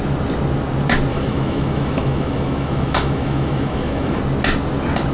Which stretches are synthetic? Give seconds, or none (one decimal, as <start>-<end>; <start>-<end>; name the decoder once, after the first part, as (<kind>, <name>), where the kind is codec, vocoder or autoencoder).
1.1-4.2 (autoencoder, DAC-VAE)